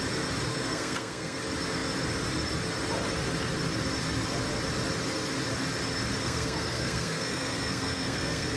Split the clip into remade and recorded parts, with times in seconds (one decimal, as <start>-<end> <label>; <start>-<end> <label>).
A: 0.0-0.5 recorded; 0.5-1.4 remade; 1.4-6.2 recorded; 6.2-8.6 remade